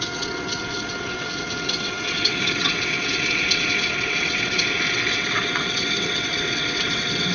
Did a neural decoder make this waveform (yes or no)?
yes